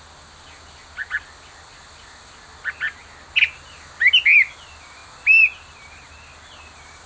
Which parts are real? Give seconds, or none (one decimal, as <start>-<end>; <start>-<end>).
0.0-7.1